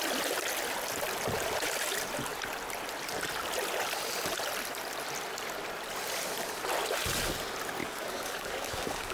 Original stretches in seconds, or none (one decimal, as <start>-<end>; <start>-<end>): 0.0-7.8